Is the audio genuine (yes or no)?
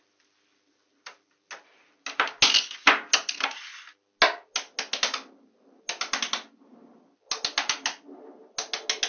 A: yes